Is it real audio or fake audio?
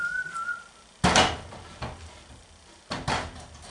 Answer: real